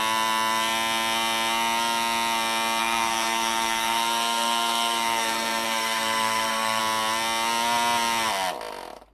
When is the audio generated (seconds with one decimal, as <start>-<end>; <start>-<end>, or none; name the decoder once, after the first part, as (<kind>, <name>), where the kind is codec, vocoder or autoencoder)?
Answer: 2.8-6.8 (codec, SNAC)